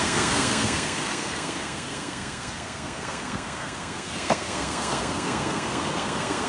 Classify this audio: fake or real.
fake